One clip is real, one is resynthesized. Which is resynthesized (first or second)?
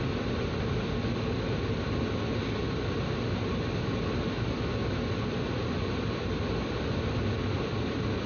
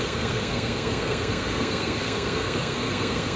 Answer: second